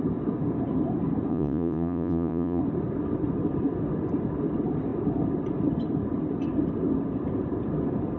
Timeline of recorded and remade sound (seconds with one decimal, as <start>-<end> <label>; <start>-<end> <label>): 0.0-1.3 recorded; 1.3-2.6 remade; 2.6-8.2 recorded